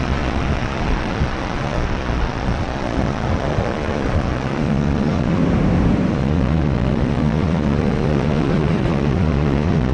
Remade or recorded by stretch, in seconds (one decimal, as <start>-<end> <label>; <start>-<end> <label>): 0.0-5.4 remade; 5.4-6.1 recorded; 6.1-9.9 remade